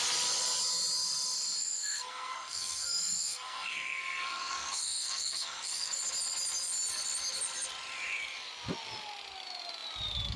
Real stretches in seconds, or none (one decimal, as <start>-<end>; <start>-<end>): 0.0-1.6; 6.0-10.4